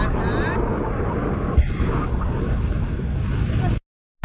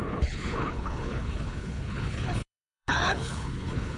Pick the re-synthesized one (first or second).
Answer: second